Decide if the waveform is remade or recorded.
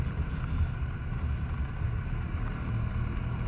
recorded